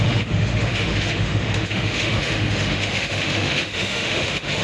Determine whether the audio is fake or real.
fake